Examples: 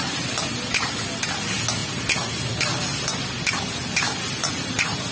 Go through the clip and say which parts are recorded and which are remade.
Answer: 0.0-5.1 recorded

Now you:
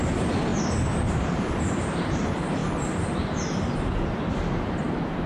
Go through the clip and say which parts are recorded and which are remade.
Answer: 0.0-2.6 remade; 2.6-4.6 recorded; 4.6-5.3 remade

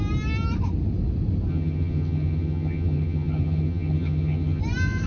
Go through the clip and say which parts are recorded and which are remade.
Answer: 0.0-1.5 recorded; 1.5-4.6 remade; 4.6-5.1 recorded

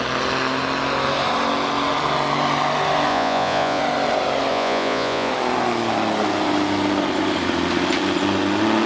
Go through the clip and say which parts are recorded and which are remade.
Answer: 0.0-3.1 recorded; 3.1-3.8 remade; 3.8-4.5 recorded; 4.5-5.3 remade; 5.3-8.9 recorded

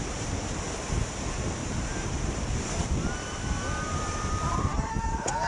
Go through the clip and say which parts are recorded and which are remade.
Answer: 0.0-1.6 recorded; 1.6-4.9 remade; 4.9-5.5 recorded

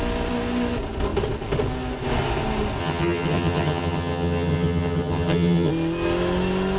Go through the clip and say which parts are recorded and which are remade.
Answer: 0.0-2.8 recorded; 2.8-5.7 remade; 5.7-6.8 recorded

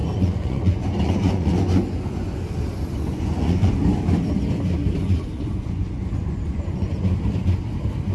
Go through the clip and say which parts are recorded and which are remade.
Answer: 0.0-2.5 remade; 2.5-2.9 recorded; 2.9-3.8 remade; 3.8-5.0 recorded; 5.0-6.9 remade; 6.9-8.1 recorded